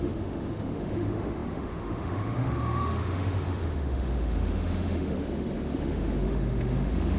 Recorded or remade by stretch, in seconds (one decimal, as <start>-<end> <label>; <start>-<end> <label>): 0.0-7.2 remade